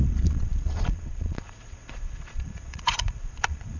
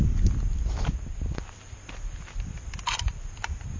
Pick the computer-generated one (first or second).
first